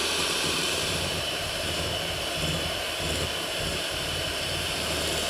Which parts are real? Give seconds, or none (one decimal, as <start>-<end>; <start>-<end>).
1.9-3.7; 4.5-5.3